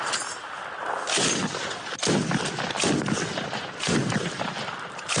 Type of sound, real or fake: real